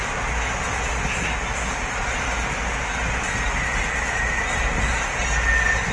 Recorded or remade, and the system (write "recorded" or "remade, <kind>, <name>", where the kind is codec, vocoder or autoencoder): recorded